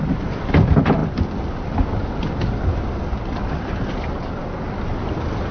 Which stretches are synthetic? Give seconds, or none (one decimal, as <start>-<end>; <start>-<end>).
none